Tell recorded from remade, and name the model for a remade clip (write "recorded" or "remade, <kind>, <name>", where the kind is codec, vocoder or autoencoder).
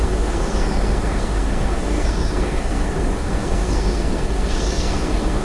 remade, codec, SNAC